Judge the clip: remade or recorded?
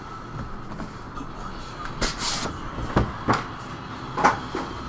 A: recorded